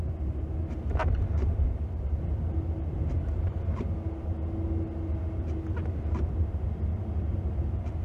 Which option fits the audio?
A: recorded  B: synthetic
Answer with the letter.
A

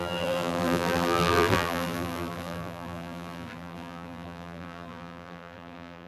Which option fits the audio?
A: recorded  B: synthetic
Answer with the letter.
B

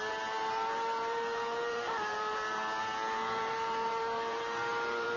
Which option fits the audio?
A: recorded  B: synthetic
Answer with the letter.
B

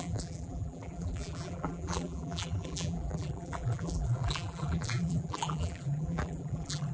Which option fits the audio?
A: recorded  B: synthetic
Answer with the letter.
B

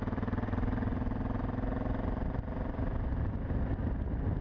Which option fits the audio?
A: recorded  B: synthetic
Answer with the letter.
B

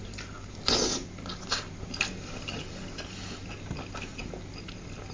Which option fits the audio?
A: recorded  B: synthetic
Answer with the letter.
A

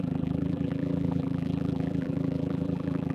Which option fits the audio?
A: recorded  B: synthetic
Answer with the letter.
B